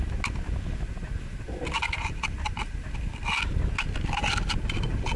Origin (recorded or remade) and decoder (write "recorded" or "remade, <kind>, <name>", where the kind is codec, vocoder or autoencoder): recorded